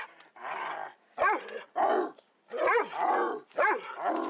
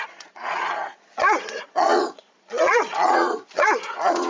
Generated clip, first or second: second